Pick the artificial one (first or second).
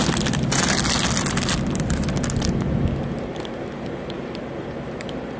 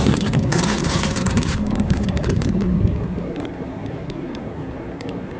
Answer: second